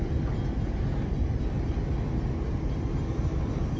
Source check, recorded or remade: recorded